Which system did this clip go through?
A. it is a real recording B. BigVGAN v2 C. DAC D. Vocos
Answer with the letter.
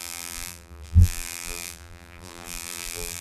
B